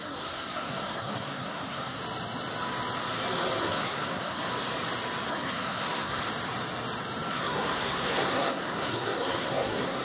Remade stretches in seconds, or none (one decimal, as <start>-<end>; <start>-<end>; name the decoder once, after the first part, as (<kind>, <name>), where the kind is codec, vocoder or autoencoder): 0.0-2.0 (codec, SNAC); 3.6-4.5; 5.3-6.2; 7.3-10.0